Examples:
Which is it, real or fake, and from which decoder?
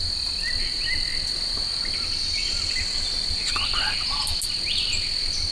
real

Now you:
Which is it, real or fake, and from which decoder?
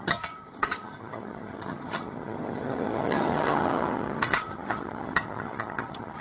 fake, vocoder, HiFi-GAN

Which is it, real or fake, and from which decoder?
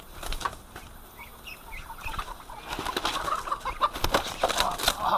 real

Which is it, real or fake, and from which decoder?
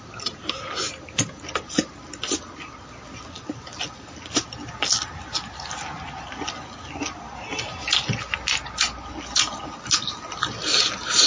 real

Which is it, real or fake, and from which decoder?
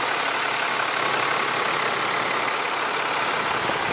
real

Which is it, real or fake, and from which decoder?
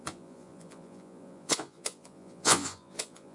fake, vocoder, Vocos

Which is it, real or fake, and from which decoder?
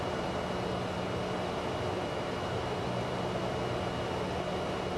real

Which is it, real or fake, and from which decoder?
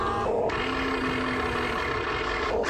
real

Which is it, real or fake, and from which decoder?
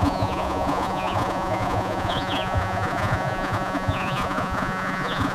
fake, vocoder, Vocos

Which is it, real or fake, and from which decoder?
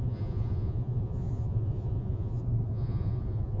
fake, vocoder, Vocos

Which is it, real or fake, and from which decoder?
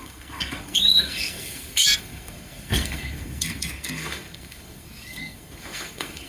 fake, codec, SNAC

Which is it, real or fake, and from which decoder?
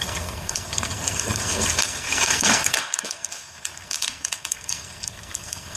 fake, codec, SNAC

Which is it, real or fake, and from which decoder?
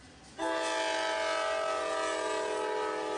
real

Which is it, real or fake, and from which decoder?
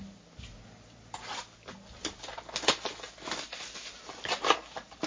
real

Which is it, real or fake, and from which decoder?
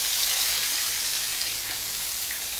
fake, codec, DAC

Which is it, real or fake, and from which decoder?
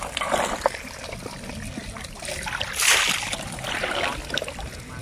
fake, vocoder, BigVGAN v2